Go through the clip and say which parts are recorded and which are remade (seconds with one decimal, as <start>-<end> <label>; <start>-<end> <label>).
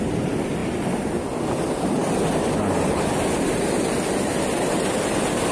0.0-5.5 recorded